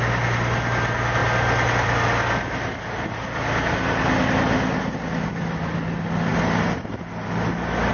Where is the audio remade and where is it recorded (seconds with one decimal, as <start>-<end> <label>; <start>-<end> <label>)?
0.0-7.9 recorded